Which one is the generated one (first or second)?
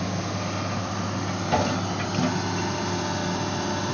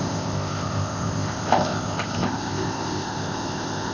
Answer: second